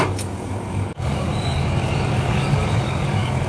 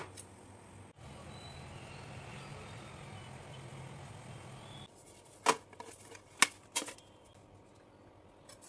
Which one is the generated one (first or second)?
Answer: first